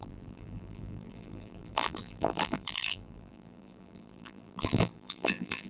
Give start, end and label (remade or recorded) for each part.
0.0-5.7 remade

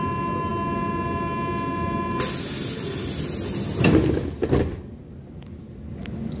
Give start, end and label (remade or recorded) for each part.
0.0-6.4 recorded

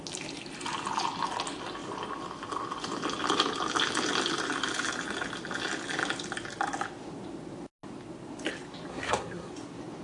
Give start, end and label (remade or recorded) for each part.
0.0-8.9 recorded; 8.9-9.5 remade; 9.5-10.0 recorded

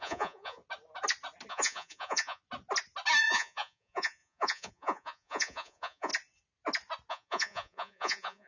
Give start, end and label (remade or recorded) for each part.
0.0-0.6 remade; 0.6-1.5 recorded; 1.5-2.4 remade; 2.4-3.2 recorded; 3.2-6.1 remade; 6.1-7.1 recorded; 7.1-8.5 remade